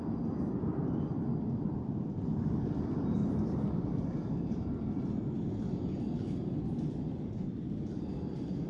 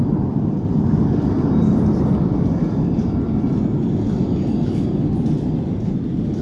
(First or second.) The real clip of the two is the second